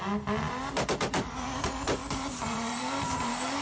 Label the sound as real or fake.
real